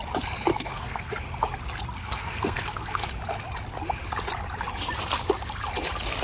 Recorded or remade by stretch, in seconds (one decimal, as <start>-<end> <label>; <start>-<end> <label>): 0.0-0.5 recorded; 0.5-1.2 remade; 1.2-2.0 recorded; 2.0-3.1 remade; 3.1-6.2 recorded